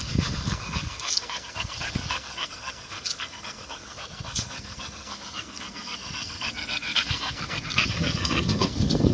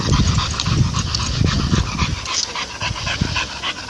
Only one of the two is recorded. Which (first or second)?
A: second